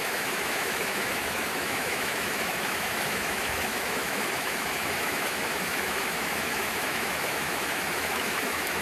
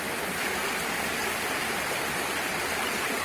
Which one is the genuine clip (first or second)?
second